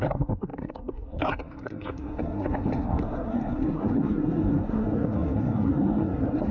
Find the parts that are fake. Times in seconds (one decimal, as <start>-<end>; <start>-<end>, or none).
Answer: 0.0-6.5